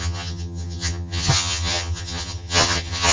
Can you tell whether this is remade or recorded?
remade